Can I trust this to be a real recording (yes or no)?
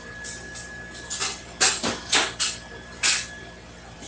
no